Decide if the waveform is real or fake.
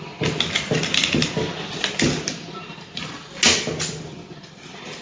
real